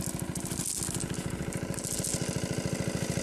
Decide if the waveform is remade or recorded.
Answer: recorded